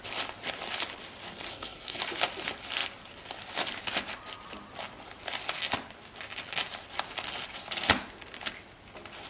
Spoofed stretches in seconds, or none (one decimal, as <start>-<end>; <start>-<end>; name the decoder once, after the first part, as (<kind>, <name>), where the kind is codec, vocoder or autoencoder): 1.5-2.0 (codec, SNAC)